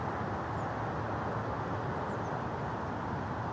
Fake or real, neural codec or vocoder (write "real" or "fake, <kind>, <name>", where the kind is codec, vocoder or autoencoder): real